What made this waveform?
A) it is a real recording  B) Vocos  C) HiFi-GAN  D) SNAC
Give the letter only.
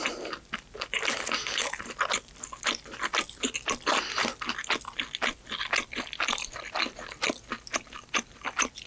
A